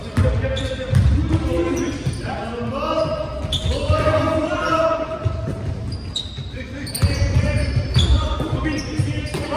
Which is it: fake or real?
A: real